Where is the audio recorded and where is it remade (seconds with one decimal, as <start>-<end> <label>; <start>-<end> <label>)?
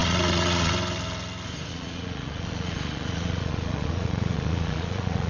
0.0-0.7 remade; 0.7-1.7 recorded; 1.7-5.3 remade